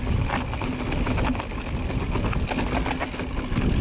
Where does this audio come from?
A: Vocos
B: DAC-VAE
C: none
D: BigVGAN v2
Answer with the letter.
C